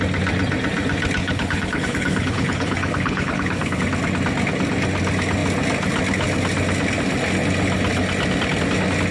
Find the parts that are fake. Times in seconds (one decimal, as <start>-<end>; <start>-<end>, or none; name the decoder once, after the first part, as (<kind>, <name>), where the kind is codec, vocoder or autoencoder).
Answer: 1.2-3.8 (codec, HILCodec)